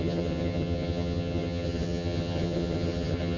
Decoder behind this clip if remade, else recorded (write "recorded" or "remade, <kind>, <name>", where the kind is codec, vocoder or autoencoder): remade, vocoder, HiFi-GAN